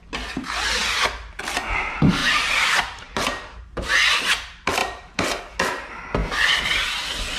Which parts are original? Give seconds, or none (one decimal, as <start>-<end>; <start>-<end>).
0.0-2.2; 4.2-4.8; 5.4-7.4